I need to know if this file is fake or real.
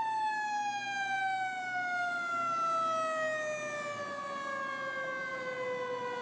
real